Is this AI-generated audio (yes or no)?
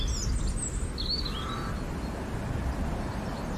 no